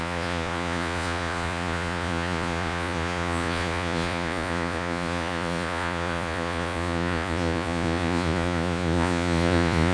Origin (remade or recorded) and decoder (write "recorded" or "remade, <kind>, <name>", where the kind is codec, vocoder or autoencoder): remade, vocoder, Vocos